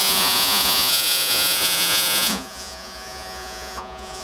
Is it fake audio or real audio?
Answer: fake